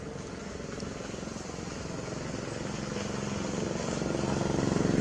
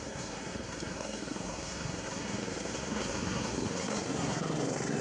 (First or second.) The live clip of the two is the first